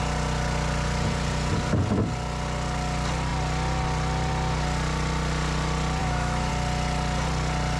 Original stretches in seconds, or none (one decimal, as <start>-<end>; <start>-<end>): 0.0-6.0; 6.5-7.8